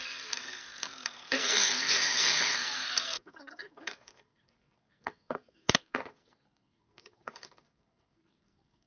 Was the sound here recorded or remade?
remade